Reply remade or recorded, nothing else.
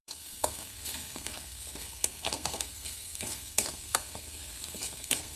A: remade